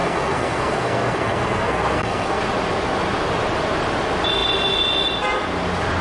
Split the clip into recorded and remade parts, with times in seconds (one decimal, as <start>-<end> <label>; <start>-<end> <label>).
0.0-2.4 remade; 2.4-6.0 recorded